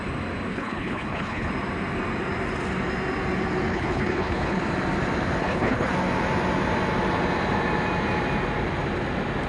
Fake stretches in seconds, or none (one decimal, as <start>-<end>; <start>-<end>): 0.5-1.5; 3.7-4.6; 5.4-5.9